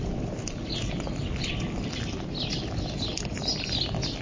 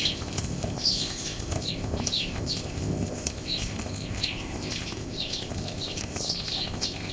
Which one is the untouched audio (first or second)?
first